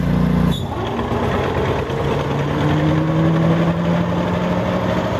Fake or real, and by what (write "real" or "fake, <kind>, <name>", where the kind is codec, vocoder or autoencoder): real